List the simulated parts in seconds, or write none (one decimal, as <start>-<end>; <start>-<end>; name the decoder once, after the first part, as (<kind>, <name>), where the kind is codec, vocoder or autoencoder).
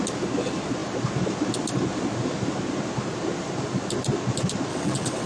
4.7-5.3 (vocoder, WaveNeXt)